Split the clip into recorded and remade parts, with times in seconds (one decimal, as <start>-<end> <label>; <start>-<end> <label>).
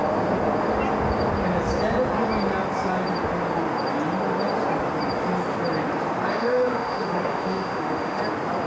0.0-6.3 recorded; 6.3-8.2 remade; 8.2-8.7 recorded